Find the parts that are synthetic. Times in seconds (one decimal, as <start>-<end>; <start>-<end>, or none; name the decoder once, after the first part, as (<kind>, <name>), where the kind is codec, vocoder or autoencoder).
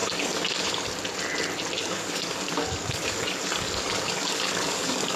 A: 0.0-0.9 (codec, DAC); 1.8-5.2